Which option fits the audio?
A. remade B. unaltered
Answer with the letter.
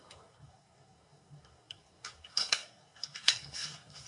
A